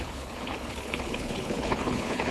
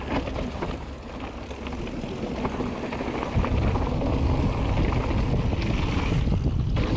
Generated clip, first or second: first